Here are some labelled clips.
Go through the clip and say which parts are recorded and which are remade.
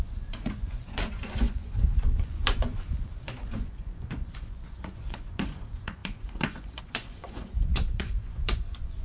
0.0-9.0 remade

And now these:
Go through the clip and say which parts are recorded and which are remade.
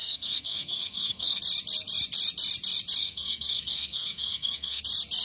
0.0-1.4 remade; 1.4-3.0 recorded; 3.0-4.8 remade; 4.8-5.2 recorded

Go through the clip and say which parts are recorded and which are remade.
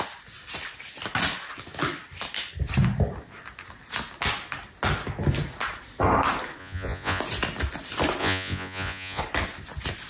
0.0-6.6 recorded; 6.6-7.2 remade; 7.2-8.2 recorded; 8.2-9.2 remade; 9.2-10.1 recorded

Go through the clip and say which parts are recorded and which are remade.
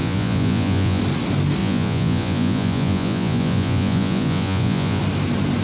0.0-1.0 remade; 1.0-1.6 recorded; 1.6-5.0 remade; 5.0-5.6 recorded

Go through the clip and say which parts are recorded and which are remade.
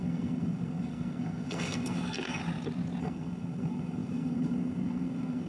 0.0-2.4 remade; 2.4-3.0 recorded; 3.0-5.5 remade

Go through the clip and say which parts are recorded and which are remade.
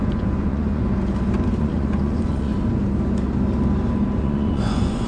0.0-0.8 remade; 0.8-1.5 recorded; 1.5-2.5 remade; 2.5-4.2 recorded; 4.2-5.1 remade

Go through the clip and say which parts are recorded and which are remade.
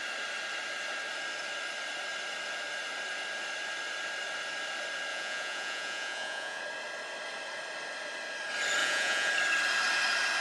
0.0-5.1 recorded; 5.1-6.6 remade; 6.6-8.8 recorded; 8.8-9.3 remade; 9.3-10.4 recorded